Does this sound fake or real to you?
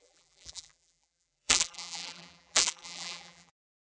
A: fake